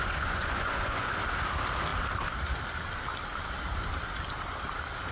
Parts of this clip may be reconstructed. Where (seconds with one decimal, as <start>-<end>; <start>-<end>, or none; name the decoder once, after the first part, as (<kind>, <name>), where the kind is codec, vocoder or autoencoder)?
0.0-1.1 (vocoder, Vocos)